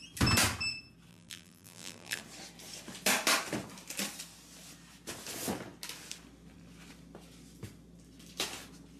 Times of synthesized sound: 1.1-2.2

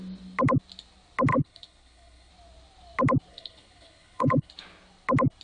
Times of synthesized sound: 1.3-2.3; 3.3-4.5